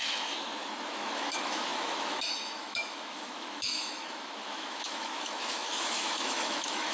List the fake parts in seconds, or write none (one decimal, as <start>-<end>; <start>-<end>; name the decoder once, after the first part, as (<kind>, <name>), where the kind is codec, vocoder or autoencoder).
0.0-6.9 (autoencoder, DAC-VAE)